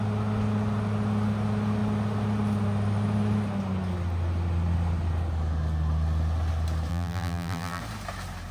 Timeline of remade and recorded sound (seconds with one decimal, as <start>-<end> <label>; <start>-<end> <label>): 0.0-6.9 recorded; 6.9-7.8 remade; 7.8-8.5 recorded

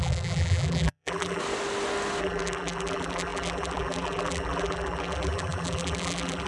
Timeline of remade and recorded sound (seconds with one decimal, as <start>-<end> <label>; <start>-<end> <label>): 0.0-1.4 remade; 1.4-2.2 recorded; 2.2-6.5 remade

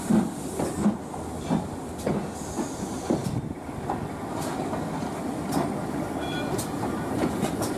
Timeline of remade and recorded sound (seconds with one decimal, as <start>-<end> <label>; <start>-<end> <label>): 0.0-7.8 recorded

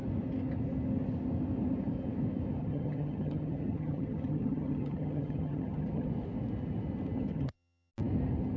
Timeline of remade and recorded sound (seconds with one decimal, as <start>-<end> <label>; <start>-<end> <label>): 0.0-2.6 recorded; 2.6-6.1 remade; 6.1-7.3 recorded; 7.3-7.9 remade; 7.9-8.6 recorded

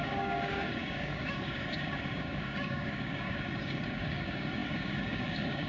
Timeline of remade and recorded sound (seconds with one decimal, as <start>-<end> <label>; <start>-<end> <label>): 0.0-5.7 remade